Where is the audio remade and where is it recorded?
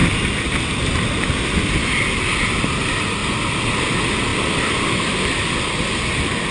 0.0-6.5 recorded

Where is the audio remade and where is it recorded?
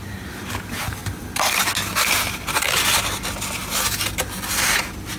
0.0-1.0 recorded; 1.0-1.6 remade; 1.6-5.2 recorded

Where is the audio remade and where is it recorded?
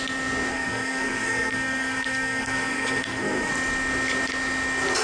0.0-0.5 recorded; 0.5-3.5 remade; 3.5-5.0 recorded